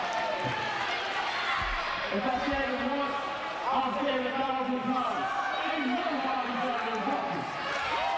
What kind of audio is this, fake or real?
real